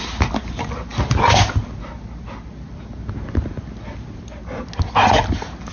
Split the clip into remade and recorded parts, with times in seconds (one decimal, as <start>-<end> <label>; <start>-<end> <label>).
0.0-5.7 recorded